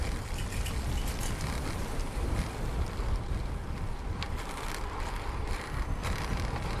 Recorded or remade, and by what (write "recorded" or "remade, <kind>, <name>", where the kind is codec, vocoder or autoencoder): recorded